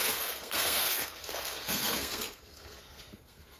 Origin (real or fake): fake